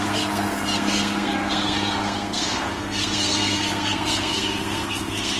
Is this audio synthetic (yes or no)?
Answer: yes